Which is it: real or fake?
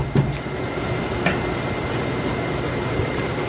fake